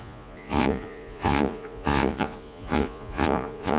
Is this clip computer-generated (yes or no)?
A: yes